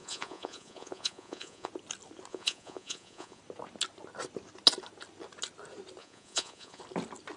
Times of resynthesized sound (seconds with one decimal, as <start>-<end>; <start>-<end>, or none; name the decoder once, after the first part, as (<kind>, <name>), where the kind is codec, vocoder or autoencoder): 0.0-1.7 (vocoder, Vocos); 2.3-3.4; 6.0-6.8